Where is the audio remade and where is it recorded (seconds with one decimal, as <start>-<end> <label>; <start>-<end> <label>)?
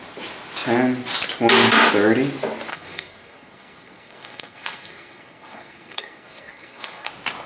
0.0-2.7 recorded; 2.7-7.1 remade; 7.1-7.5 recorded